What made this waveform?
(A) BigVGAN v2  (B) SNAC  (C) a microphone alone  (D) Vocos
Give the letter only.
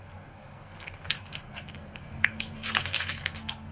B